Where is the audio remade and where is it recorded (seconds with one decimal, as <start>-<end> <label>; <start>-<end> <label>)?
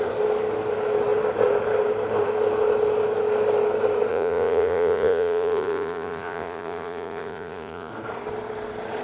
0.0-4.1 recorded; 4.1-7.9 remade; 7.9-9.0 recorded